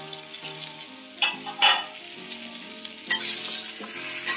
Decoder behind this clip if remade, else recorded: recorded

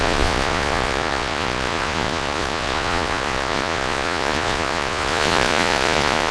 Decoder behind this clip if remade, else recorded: remade, vocoder, Vocos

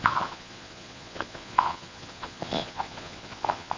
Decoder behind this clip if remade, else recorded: remade, vocoder, Vocos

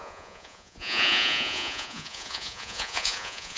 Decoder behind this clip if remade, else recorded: remade, vocoder, Vocos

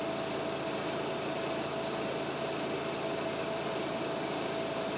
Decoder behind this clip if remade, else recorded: recorded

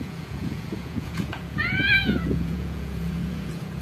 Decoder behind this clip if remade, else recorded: remade, vocoder, Vocos